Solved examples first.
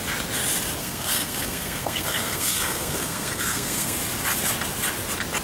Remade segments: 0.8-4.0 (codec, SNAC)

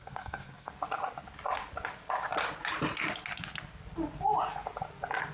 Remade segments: 0.0-0.7 (codec, SNAC)

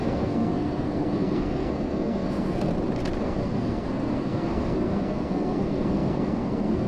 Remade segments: 0.0-2.7 (codec, SNAC); 3.2-6.9

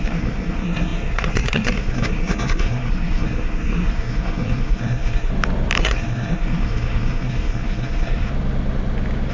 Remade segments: 0.0-5.3 (codec, SNAC); 5.8-8.3

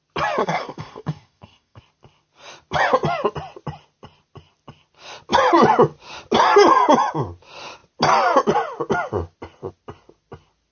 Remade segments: 0.4-1.8 (codec, SNAC)

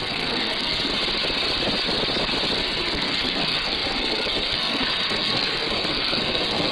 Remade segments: 0.0-0.9 (codec, SNAC); 2.6-6.7